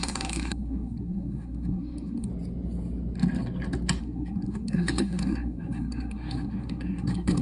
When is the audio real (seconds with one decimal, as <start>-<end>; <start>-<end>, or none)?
2.3-4.0